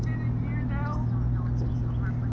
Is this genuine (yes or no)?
yes